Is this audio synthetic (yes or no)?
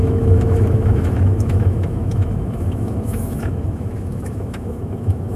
yes